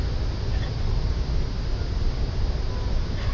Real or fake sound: real